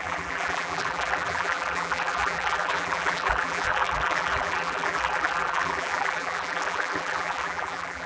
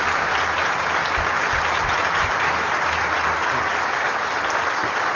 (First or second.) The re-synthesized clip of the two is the first